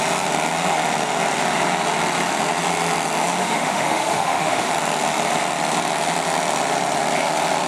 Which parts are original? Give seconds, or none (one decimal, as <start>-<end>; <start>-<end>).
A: 0.0-3.4; 4.7-7.7